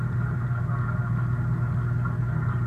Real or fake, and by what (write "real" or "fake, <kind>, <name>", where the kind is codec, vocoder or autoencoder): real